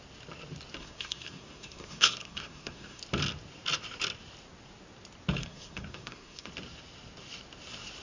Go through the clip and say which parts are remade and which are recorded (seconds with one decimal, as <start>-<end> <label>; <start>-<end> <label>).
0.0-0.8 recorded; 0.8-3.0 remade; 3.0-5.4 recorded; 5.4-6.5 remade; 6.5-8.0 recorded

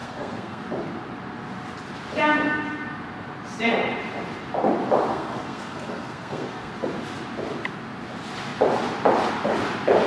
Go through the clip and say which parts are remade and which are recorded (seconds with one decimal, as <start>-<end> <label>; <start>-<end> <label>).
0.0-0.6 remade; 0.6-5.1 recorded; 5.1-6.7 remade; 6.7-10.1 recorded

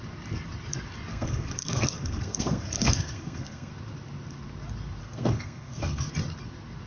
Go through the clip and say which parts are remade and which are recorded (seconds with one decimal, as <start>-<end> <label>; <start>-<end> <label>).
0.0-1.1 recorded; 1.1-3.7 remade; 3.7-5.0 recorded; 5.0-6.1 remade; 6.1-6.9 recorded